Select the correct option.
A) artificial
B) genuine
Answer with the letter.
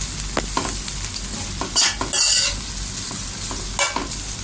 B